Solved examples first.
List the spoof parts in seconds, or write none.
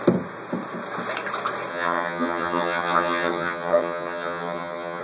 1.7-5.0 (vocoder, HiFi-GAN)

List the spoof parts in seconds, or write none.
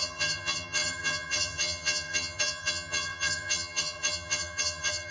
0.0-5.1 (vocoder, HiFi-GAN)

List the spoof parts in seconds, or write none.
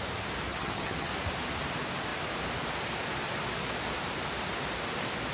0.5-1.1 (vocoder, HiFi-GAN)